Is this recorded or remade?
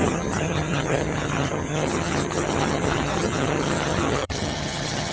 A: remade